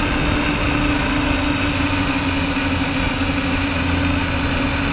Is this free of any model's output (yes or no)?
yes